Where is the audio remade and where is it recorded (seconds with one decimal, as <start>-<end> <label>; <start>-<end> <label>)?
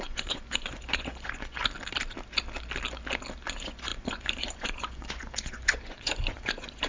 0.0-1.6 remade; 1.6-3.4 recorded; 3.4-6.9 remade